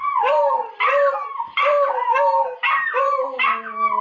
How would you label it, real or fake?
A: real